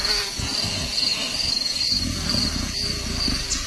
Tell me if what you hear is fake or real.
real